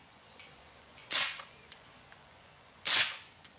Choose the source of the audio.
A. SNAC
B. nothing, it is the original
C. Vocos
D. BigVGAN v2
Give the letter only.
C